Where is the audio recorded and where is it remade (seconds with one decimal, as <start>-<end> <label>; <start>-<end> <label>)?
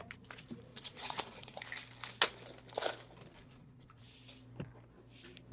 0.0-0.7 recorded; 0.7-1.6 remade; 1.6-3.3 recorded; 3.3-4.0 remade; 4.0-5.5 recorded